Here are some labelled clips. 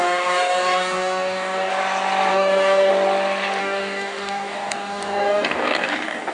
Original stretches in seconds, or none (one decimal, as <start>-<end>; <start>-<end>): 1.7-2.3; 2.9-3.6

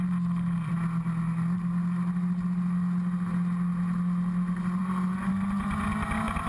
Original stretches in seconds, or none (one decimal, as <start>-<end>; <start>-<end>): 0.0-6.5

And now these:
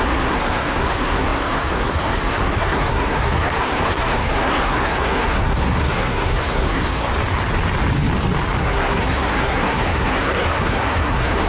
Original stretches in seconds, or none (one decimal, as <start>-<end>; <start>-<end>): 7.1-8.6

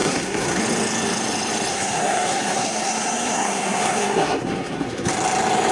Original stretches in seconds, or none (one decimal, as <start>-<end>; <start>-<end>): 0.6-1.7; 5.1-5.7